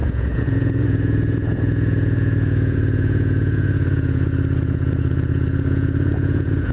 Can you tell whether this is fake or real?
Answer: fake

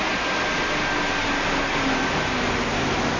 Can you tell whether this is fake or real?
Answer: real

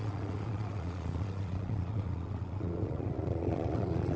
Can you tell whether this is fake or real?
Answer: fake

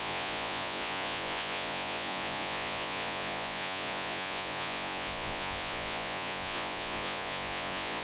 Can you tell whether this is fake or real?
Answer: fake